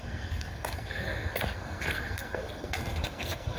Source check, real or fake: fake